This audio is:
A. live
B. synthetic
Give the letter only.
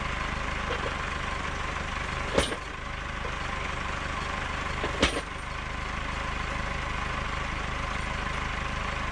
A